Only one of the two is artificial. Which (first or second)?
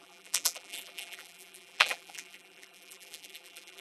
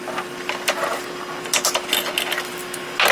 first